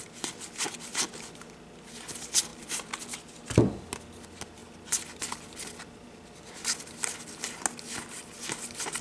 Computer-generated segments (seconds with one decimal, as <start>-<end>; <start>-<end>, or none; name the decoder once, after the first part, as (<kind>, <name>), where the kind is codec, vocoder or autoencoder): 2.5-3.0 (vocoder, BigVGAN v2)